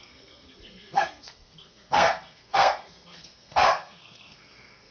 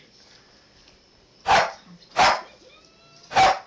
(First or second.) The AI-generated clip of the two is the first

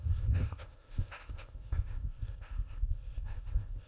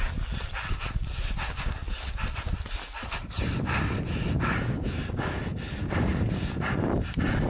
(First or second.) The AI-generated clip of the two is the first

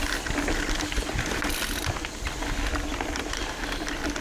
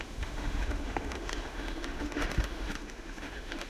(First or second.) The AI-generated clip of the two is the second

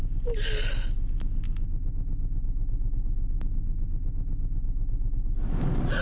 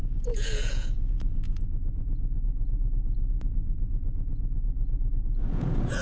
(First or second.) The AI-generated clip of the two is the second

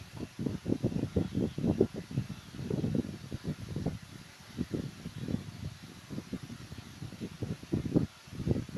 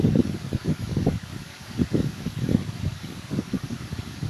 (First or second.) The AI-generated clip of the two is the second